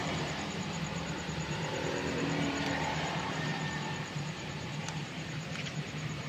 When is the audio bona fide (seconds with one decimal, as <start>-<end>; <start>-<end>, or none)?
3.5-4.2